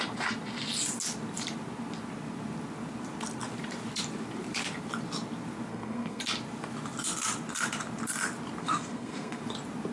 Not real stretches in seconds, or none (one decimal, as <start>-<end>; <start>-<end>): 5.7-6.2; 8.6-9.4